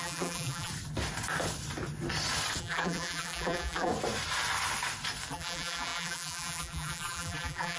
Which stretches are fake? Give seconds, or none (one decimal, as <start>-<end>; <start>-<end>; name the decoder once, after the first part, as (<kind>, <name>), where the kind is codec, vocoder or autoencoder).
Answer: 0.0-0.7 (vocoder, BigVGAN v2); 2.6-3.9; 5.3-7.8